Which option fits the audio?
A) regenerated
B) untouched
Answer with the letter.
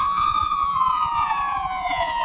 A